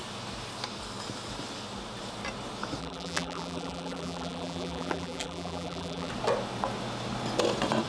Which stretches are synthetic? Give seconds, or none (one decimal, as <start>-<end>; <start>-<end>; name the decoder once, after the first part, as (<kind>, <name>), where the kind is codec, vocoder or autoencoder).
2.8-6.1 (vocoder, BigVGAN v2)